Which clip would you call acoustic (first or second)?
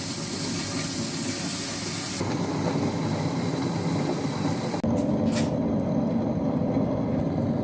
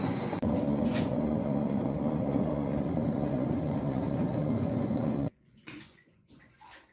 first